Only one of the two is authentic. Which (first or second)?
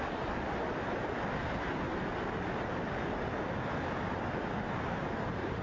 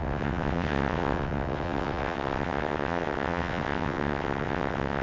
first